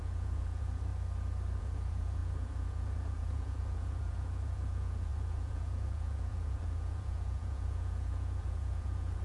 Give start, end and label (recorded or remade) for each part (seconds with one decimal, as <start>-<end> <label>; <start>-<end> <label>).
0.0-0.9 remade; 0.9-1.6 recorded; 1.6-9.2 remade